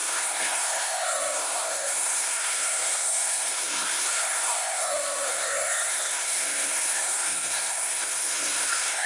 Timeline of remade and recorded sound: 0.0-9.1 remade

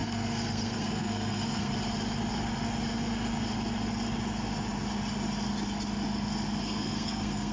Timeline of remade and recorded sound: 0.0-1.7 remade; 1.7-6.6 recorded; 6.6-7.5 remade

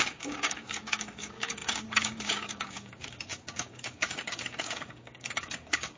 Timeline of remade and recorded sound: 0.0-6.0 remade

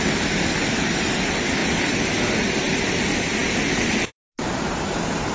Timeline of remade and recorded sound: 0.0-1.6 recorded; 1.6-2.3 remade; 2.3-3.4 recorded; 3.4-4.5 remade; 4.5-5.3 recorded